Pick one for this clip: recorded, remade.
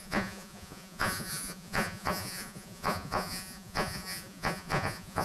remade